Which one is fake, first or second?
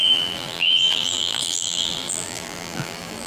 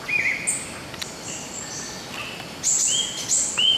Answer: first